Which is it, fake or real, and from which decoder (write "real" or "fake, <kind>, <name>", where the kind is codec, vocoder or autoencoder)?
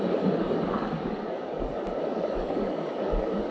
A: fake, codec, DAC